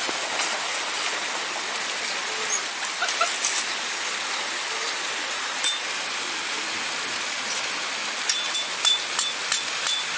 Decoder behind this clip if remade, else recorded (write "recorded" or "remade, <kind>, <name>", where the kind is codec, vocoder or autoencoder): recorded